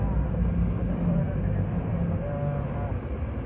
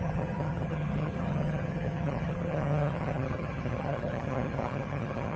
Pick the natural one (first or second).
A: first